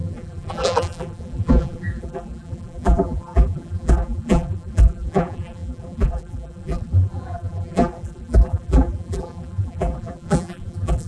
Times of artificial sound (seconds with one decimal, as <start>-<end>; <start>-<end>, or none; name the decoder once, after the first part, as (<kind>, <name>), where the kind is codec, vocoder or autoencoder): 0.0-11.1 (vocoder, BigVGAN v2)